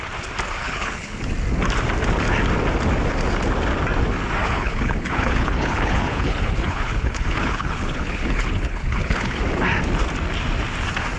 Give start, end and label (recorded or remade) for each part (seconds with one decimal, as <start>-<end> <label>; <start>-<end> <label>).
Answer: 0.0-0.6 recorded; 0.6-1.2 remade; 1.2-4.4 recorded; 4.4-9.4 remade; 9.4-11.2 recorded